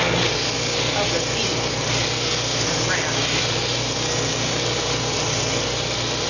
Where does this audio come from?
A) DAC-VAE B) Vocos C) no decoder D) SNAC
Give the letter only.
C